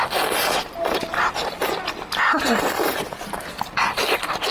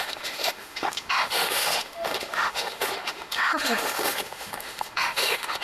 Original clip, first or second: first